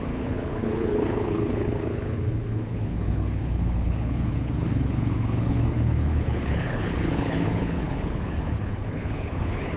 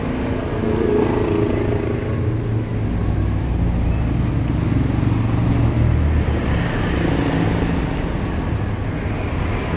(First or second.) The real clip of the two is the second